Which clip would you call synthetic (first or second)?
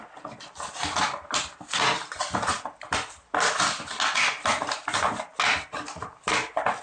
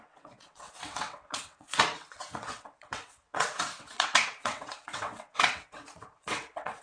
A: second